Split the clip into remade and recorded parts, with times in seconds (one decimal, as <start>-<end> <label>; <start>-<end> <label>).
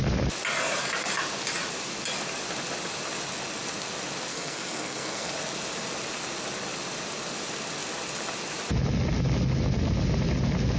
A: 0.0-4.3 recorded; 4.3-5.3 remade; 5.3-10.8 recorded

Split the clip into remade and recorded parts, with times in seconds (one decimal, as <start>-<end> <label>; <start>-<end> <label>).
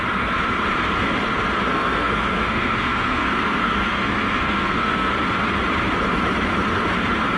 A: 0.0-1.7 recorded; 1.7-5.1 remade; 5.1-7.4 recorded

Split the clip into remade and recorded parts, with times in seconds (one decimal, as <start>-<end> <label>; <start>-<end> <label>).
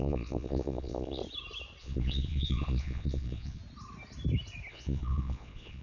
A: 0.0-1.2 remade; 1.2-1.8 recorded; 1.8-3.6 remade; 3.6-4.7 recorded; 4.7-5.8 remade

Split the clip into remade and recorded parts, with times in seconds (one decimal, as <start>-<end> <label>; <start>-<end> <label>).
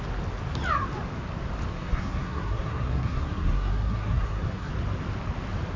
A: 0.0-1.7 recorded; 1.7-4.7 remade; 4.7-5.8 recorded